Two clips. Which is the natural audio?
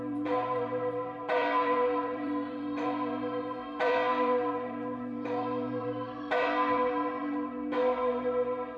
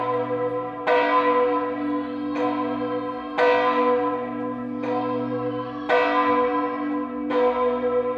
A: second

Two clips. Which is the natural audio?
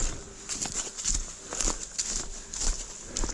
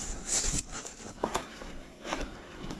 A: first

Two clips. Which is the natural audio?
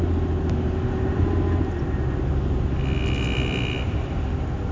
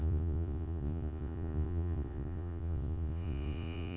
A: first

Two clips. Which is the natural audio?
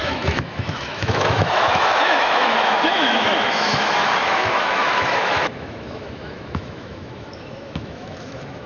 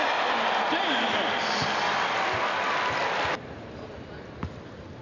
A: second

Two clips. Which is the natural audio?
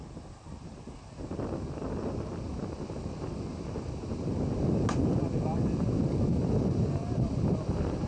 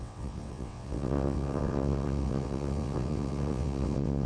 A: first